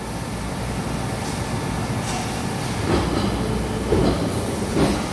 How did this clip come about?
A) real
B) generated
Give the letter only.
A